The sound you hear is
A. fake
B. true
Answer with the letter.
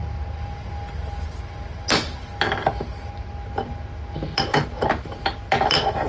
B